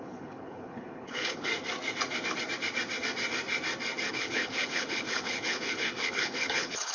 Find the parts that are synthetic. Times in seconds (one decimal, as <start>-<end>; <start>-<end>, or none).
0.0-1.5; 4.1-6.9